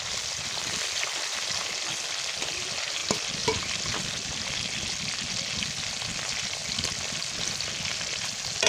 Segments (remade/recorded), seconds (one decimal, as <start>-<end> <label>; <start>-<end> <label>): 0.0-8.7 recorded